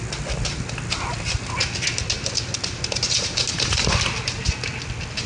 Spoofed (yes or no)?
no